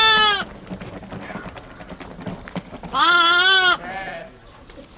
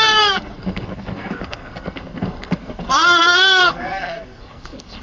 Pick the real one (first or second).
first